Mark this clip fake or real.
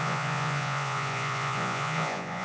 fake